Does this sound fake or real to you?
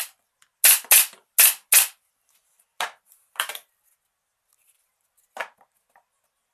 real